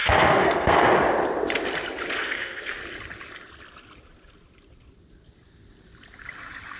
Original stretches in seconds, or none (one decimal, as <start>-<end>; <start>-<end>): 0.9-2.2; 2.8-6.8